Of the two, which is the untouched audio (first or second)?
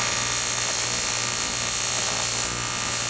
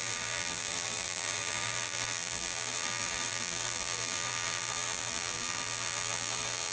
first